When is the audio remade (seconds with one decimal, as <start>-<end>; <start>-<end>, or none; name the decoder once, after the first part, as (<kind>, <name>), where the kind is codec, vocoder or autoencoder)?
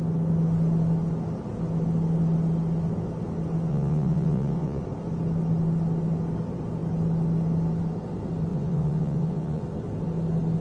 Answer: 3.7-4.8 (vocoder, Vocos); 8.5-9.6